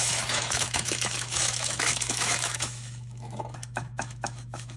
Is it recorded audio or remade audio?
remade